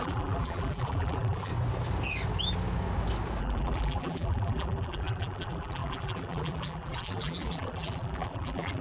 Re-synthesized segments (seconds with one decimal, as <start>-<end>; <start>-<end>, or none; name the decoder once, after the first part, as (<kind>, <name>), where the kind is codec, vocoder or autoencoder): 0.0-1.5 (vocoder, BigVGAN v2); 3.4-8.8